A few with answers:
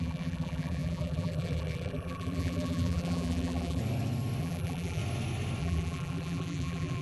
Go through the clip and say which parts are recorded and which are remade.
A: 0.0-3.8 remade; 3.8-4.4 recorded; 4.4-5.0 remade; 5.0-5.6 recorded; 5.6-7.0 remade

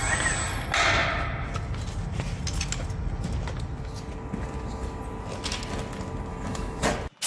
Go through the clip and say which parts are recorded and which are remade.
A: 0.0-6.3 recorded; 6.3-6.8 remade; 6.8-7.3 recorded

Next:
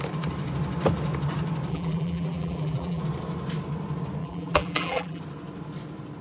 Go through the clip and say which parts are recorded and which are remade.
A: 0.0-1.7 recorded; 1.7-3.0 remade; 3.0-4.2 recorded; 4.2-5.2 remade; 5.2-6.2 recorded

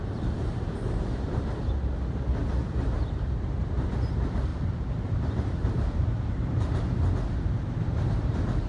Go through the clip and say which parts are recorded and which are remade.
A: 0.0-1.7 remade; 1.7-4.5 recorded; 4.5-8.1 remade; 8.1-8.7 recorded